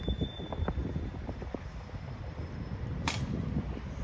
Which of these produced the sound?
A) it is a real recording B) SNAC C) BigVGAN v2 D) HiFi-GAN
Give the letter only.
C